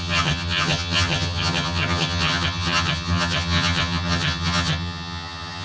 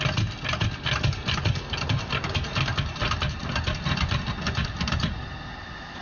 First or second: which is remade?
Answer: first